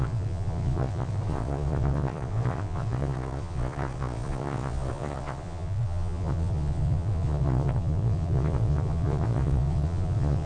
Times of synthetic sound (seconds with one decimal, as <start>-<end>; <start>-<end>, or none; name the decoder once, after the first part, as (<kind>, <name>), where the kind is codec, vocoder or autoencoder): 0.0-10.5 (vocoder, Vocos)